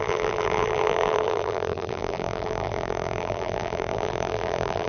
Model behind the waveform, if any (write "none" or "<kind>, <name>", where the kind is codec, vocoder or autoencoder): vocoder, BigVGAN v2